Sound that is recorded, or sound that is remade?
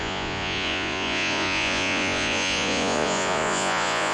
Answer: remade